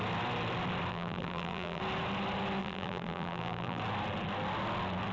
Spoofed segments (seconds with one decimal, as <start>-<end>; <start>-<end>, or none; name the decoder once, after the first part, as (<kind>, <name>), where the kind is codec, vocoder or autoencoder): 0.9-1.8 (vocoder, BigVGAN v2); 2.6-3.8